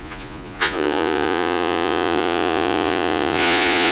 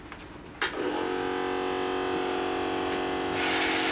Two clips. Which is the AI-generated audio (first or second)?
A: first